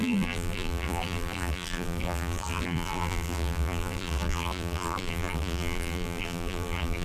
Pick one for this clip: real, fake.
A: fake